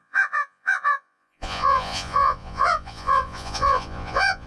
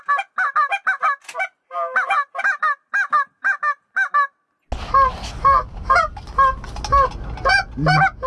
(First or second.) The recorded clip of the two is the second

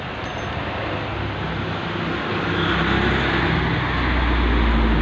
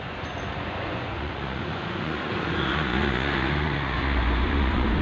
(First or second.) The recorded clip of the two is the first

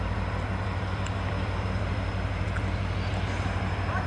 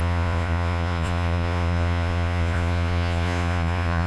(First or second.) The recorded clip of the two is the first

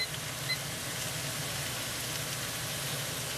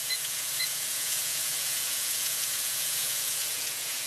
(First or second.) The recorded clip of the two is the first